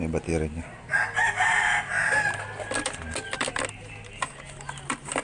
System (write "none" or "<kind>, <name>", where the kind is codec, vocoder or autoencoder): none